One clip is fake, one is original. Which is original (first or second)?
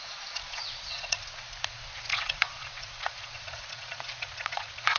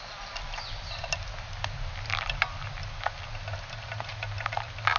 second